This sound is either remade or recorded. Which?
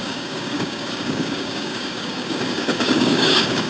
remade